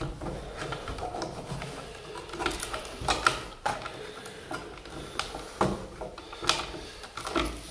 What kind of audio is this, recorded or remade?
recorded